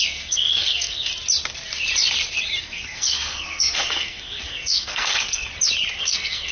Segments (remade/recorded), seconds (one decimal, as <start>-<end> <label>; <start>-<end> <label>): 0.0-1.1 remade; 1.1-2.6 recorded; 2.6-5.5 remade; 5.5-6.0 recorded; 6.0-6.5 remade